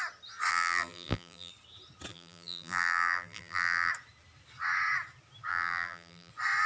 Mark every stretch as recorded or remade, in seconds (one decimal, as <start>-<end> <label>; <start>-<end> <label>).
0.0-0.5 recorded; 0.5-1.5 remade; 1.5-2.1 recorded; 2.1-3.9 remade; 3.9-5.5 recorded; 5.5-6.3 remade; 6.3-6.7 recorded